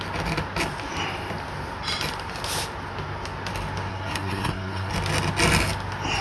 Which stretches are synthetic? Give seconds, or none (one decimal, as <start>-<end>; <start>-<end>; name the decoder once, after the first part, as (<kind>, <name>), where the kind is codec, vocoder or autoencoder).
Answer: 3.9-4.9 (codec, SNAC)